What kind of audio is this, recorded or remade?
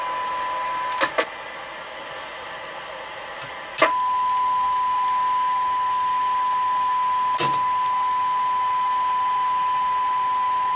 recorded